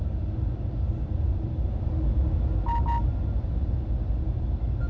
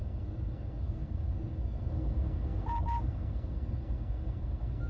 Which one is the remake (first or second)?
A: second